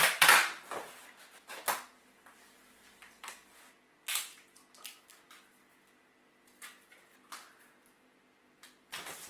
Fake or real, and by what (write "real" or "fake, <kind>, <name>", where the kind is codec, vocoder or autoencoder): fake, vocoder, BigVGAN v2